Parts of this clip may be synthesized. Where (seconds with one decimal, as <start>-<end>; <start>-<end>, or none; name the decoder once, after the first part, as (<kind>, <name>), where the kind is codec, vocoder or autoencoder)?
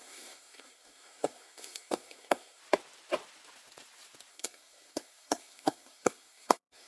0.0-2.6 (codec, SNAC); 4.3-6.9